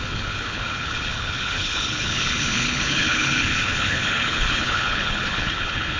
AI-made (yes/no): yes